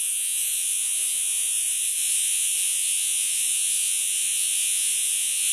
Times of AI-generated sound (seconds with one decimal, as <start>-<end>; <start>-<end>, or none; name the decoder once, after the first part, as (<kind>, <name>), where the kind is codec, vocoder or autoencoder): 0.0-5.5 (vocoder, Vocos)